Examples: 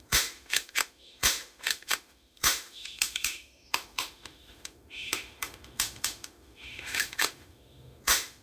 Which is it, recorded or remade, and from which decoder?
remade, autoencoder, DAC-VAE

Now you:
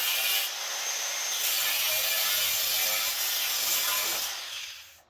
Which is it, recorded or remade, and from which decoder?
recorded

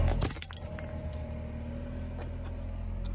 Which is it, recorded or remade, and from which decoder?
recorded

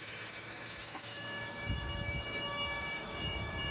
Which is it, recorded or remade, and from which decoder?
remade, autoencoder, DAC-VAE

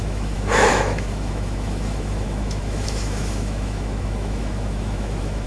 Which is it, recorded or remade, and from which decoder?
remade, autoencoder, DAC-VAE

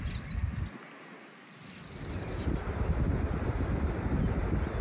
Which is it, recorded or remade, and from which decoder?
recorded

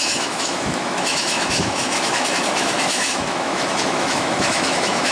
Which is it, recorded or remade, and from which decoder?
remade, autoencoder, DAC-VAE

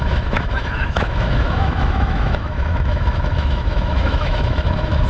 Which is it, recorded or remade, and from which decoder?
remade, autoencoder, DAC-VAE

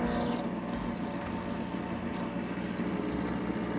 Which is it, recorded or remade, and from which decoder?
recorded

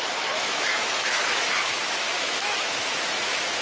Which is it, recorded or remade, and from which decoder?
remade, autoencoder, DAC-VAE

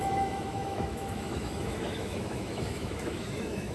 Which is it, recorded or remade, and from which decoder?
remade, autoencoder, DAC-VAE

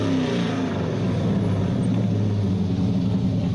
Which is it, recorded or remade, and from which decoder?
recorded